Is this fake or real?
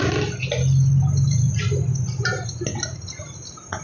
real